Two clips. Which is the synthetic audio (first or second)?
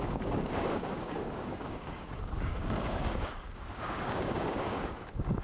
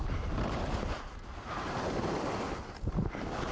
first